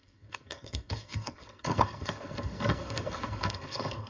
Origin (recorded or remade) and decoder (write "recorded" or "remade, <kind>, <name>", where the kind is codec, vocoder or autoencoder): remade, codec, SNAC